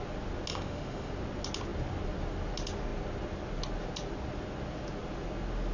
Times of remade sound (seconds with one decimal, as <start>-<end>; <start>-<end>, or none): 0.5-1.1